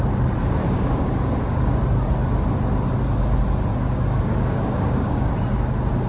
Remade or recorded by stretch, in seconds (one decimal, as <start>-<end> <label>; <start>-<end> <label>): 0.0-0.6 recorded; 0.6-2.1 remade; 2.1-3.7 recorded; 3.7-5.3 remade; 5.3-6.1 recorded

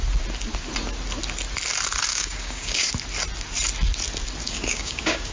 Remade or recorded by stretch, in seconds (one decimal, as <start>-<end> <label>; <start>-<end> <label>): 0.0-2.1 recorded; 2.1-2.9 remade; 2.9-4.4 recorded; 4.4-5.3 remade

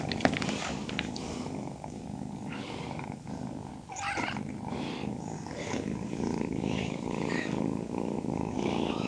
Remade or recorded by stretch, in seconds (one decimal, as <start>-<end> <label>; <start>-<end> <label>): 0.0-3.7 remade; 3.7-4.7 recorded; 4.7-9.1 remade

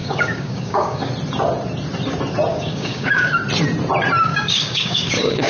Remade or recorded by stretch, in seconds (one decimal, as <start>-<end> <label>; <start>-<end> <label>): 0.0-1.1 remade; 1.1-2.5 recorded; 2.5-3.4 remade; 3.4-4.3 recorded; 4.3-5.5 remade

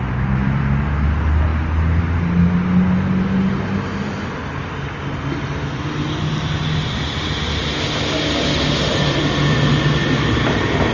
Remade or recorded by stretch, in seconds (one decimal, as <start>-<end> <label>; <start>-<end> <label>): 0.0-10.9 recorded